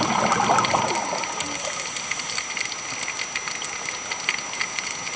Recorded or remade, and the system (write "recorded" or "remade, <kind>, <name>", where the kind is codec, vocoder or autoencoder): recorded